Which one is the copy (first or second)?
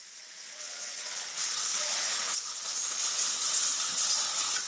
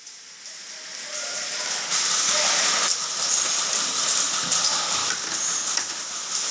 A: first